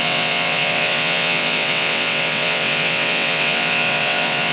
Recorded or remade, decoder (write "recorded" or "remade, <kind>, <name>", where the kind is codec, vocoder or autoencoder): remade, vocoder, WaveNeXt